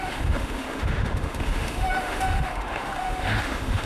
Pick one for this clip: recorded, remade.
remade